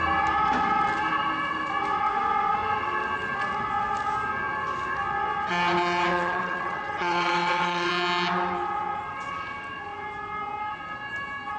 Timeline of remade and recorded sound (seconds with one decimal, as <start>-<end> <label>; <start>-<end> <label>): 0.0-6.1 recorded; 6.1-7.9 remade; 7.9-11.6 recorded